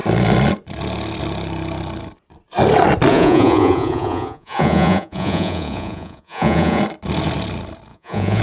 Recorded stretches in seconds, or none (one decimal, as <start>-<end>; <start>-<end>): 0.0-3.1; 6.8-7.9